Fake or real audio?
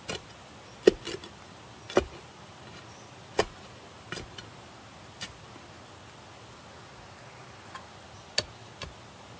real